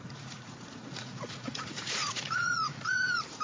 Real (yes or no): no